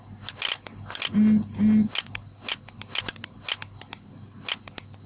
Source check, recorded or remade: recorded